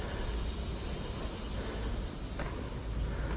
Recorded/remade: recorded